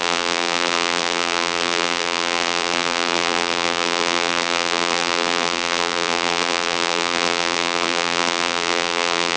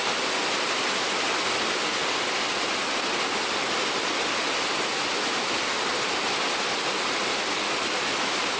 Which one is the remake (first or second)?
first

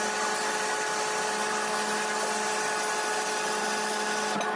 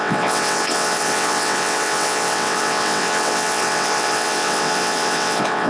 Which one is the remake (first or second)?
second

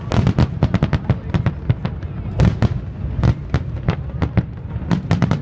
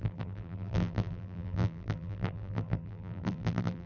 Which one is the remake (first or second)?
second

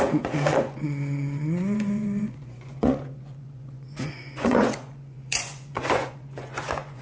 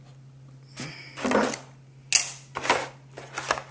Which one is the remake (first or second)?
first